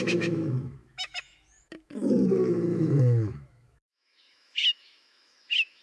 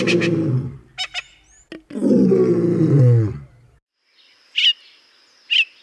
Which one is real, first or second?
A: second